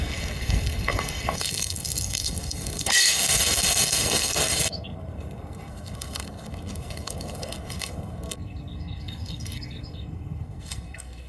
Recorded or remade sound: remade